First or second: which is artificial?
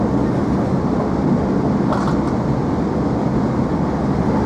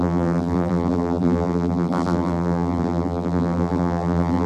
second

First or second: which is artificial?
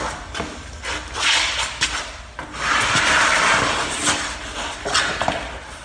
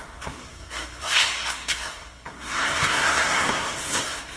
second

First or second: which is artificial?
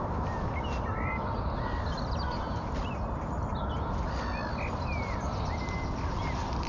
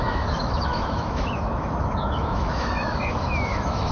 second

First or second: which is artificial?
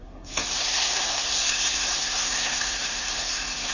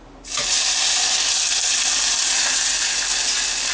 first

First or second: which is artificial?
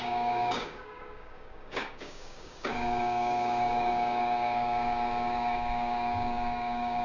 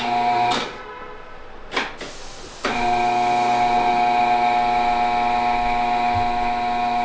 first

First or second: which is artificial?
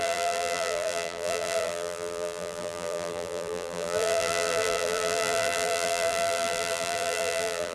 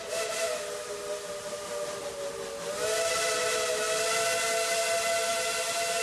first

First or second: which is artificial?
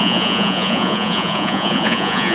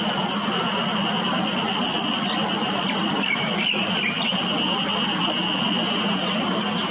first